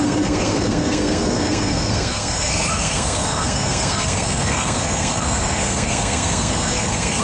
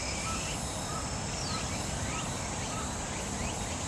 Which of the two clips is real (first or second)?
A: second